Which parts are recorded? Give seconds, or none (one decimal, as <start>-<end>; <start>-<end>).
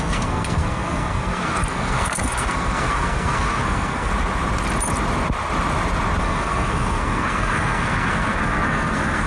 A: 4.1-6.2